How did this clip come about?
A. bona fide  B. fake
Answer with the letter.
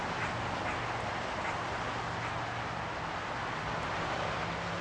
A